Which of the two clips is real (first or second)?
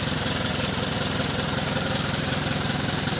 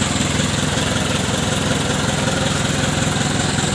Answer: second